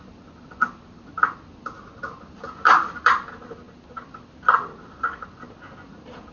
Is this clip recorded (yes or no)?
yes